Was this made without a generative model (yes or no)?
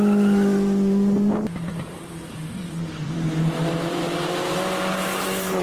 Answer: yes